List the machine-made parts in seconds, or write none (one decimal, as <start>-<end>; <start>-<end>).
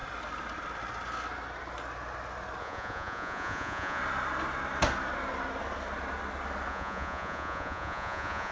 2.6-4.0; 6.7-8.5